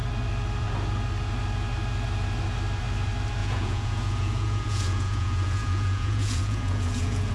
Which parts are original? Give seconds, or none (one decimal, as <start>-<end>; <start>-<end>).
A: 0.0-3.4